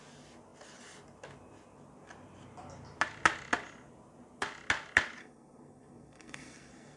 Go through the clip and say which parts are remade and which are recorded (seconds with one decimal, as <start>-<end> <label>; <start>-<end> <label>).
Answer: 0.0-5.2 recorded; 5.2-7.0 remade